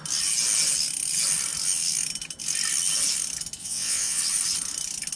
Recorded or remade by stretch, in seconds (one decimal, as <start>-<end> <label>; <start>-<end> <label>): 0.0-3.6 recorded; 3.6-4.2 remade; 4.2-5.2 recorded

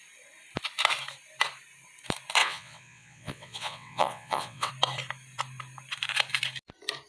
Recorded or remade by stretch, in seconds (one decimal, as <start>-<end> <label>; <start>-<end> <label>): 0.0-2.4 recorded; 2.4-4.7 remade; 4.7-7.1 recorded